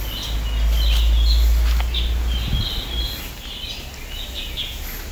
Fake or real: real